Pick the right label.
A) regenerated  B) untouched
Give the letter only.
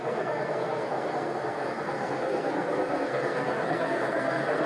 A